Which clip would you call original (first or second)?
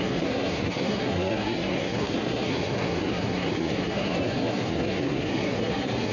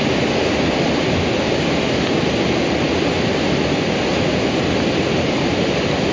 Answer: second